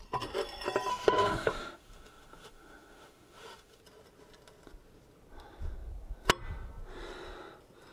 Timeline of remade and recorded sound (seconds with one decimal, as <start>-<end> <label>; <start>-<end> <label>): 0.0-0.9 recorded; 0.9-3.8 remade; 3.8-7.9 recorded